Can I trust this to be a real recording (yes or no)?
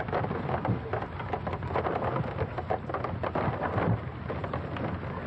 yes